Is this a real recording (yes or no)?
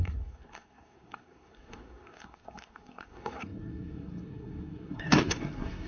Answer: no